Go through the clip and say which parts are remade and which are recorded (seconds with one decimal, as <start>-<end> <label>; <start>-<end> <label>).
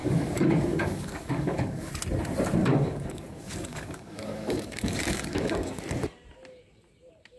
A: 0.0-1.9 remade; 1.9-2.6 recorded; 2.6-5.8 remade; 5.8-7.4 recorded